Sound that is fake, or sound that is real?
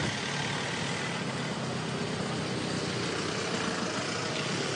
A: real